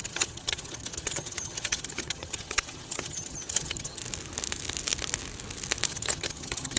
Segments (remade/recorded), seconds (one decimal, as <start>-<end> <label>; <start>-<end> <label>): 0.0-4.0 remade; 4.0-5.9 recorded; 5.9-6.8 remade